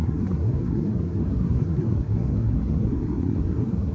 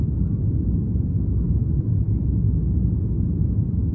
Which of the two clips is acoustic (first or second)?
second